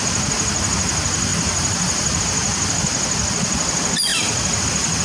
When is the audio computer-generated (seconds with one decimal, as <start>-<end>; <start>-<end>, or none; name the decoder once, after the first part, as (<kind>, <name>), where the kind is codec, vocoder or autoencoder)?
1.3-2.2 (vocoder, BigVGAN v2)